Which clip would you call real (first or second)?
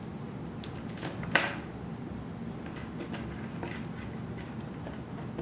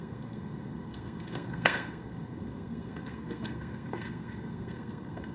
first